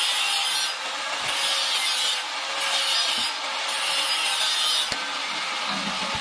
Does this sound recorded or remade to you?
recorded